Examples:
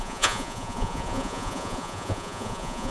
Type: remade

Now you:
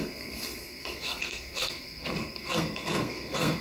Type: remade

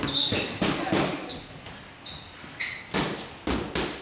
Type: recorded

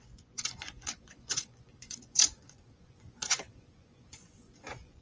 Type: remade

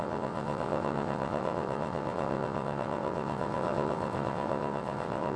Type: remade